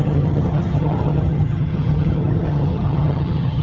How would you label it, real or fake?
fake